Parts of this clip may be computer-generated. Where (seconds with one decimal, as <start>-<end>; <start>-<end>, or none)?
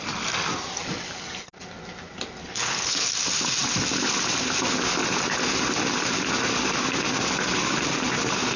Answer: 2.4-3.1